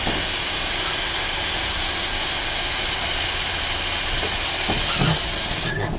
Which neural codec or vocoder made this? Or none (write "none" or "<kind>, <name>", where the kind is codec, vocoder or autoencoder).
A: none